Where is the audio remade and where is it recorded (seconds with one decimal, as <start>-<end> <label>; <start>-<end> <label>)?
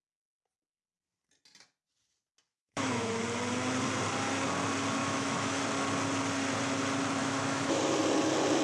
0.0-2.5 recorded; 2.5-3.2 remade; 3.2-5.0 recorded; 5.0-5.6 remade; 5.6-7.2 recorded; 7.2-7.8 remade; 7.8-8.6 recorded